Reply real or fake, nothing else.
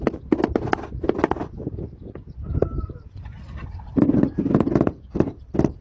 real